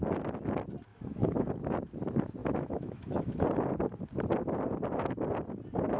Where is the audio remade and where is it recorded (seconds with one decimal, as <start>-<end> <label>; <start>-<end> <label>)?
0.0-0.9 recorded; 0.9-1.5 remade; 1.5-2.4 recorded; 2.4-3.4 remade; 3.4-6.0 recorded